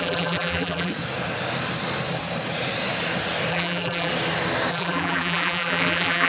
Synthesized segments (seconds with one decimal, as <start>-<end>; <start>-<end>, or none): 0.0-0.9; 3.5-4.1; 4.7-6.3